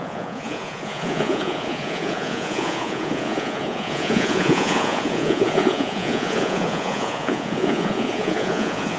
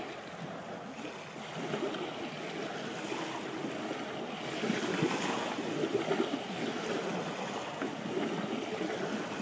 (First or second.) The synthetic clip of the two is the first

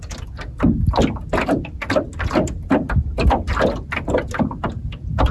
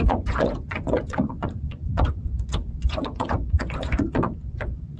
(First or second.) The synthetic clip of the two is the second